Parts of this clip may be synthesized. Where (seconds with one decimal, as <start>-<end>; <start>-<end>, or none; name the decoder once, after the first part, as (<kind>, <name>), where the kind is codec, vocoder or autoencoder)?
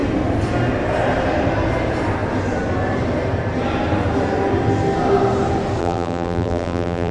5.8-7.1 (vocoder, BigVGAN v2)